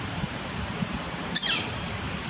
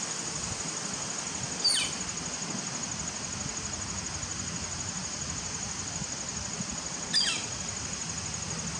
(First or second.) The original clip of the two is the second